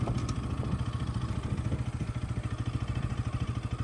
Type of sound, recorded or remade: recorded